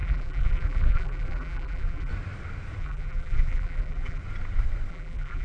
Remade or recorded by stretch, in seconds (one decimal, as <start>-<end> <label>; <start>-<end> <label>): 0.0-2.1 remade; 2.1-2.8 recorded; 2.8-4.2 remade; 4.2-4.9 recorded; 4.9-5.4 remade